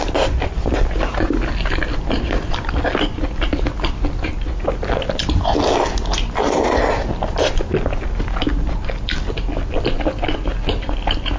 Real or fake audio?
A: real